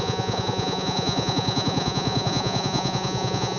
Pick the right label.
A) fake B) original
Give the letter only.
A